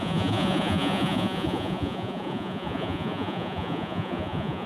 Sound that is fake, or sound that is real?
fake